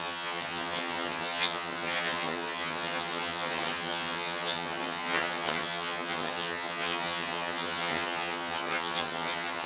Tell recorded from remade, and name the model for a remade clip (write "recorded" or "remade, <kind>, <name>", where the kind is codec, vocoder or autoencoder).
remade, vocoder, HiFi-GAN